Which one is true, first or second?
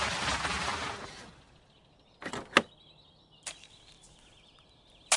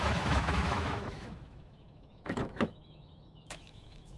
first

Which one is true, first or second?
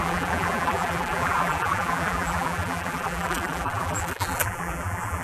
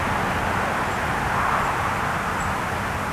second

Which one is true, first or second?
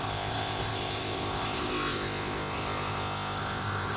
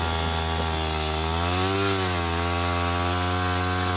second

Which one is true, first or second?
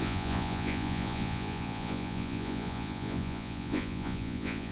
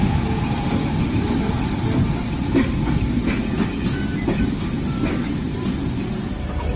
second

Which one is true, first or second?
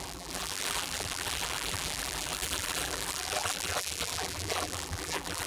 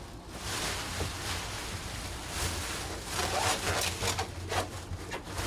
second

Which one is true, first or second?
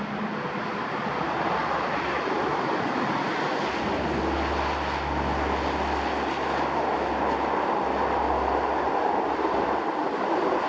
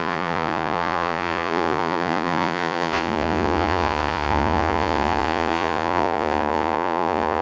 first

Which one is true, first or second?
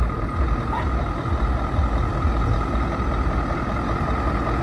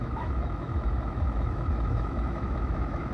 first